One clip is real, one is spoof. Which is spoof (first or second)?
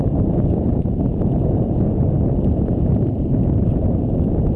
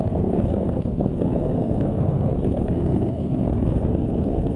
second